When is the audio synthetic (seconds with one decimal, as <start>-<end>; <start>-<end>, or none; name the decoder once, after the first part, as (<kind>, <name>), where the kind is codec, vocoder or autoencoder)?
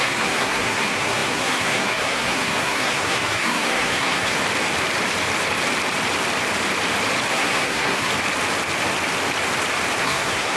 0.0-4.4 (codec, SNAC); 7.3-8.1; 10.0-10.6